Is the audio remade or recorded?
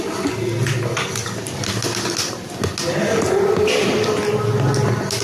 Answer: recorded